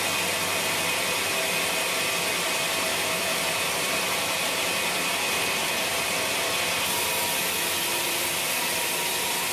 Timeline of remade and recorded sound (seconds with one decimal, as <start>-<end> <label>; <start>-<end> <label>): 0.0-2.9 recorded; 2.9-3.4 remade; 3.4-9.5 recorded